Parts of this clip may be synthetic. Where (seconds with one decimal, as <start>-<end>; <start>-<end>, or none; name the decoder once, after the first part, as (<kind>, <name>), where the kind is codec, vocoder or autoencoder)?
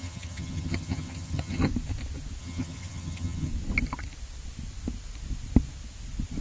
0.0-1.7 (vocoder, HiFi-GAN); 2.4-3.5